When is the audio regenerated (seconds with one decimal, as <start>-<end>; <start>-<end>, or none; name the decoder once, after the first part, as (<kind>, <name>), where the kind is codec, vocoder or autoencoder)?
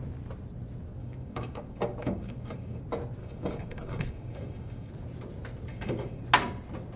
1.0-2.8 (codec, DAC); 3.2-4.9; 5.7-6.2